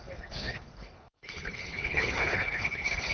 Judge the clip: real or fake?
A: fake